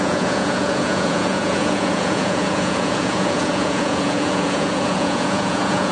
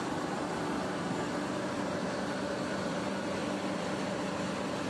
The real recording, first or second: second